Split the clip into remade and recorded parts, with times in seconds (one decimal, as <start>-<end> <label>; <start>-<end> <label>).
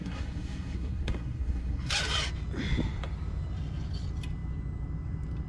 0.0-1.9 remade; 1.9-5.5 recorded